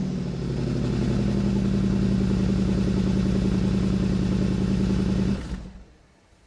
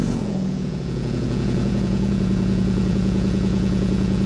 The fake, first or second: second